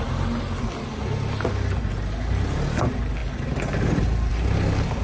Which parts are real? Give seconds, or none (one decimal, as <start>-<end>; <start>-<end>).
0.0-5.0